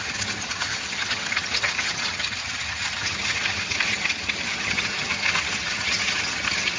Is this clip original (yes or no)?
no